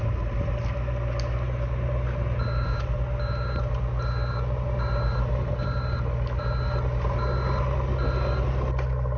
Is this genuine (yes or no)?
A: yes